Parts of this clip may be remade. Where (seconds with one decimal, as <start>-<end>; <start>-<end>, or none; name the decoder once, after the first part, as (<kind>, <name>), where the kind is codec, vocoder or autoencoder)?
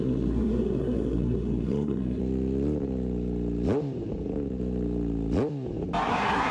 0.0-2.2 (codec, SNAC); 6.1-6.5